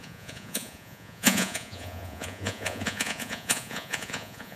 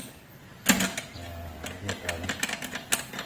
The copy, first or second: first